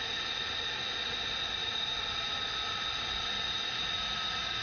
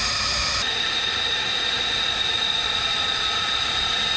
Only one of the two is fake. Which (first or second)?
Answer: second